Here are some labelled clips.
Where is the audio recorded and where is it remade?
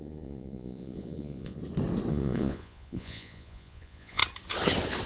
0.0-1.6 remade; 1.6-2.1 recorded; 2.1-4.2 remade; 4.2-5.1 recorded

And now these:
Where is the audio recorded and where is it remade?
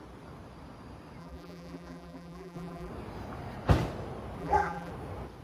0.0-1.2 recorded; 1.2-2.9 remade; 2.9-4.4 recorded; 4.4-4.9 remade; 4.9-5.4 recorded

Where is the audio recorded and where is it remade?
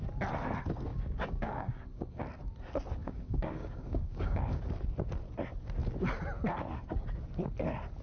0.0-0.9 recorded; 0.9-2.2 remade; 2.2-3.0 recorded; 3.0-4.6 remade; 4.6-8.0 recorded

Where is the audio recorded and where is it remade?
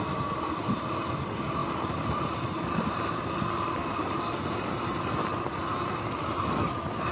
0.0-7.1 recorded